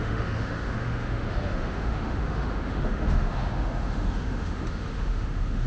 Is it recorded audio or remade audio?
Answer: remade